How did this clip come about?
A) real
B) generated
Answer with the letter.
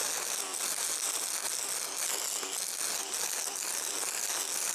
A